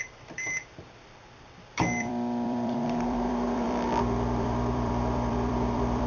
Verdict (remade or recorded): remade